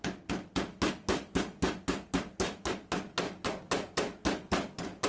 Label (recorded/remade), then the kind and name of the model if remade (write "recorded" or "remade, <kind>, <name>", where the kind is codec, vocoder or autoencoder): recorded